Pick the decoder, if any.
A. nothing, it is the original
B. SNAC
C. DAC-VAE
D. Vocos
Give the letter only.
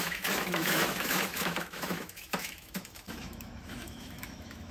C